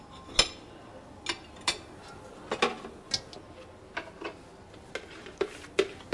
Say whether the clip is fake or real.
real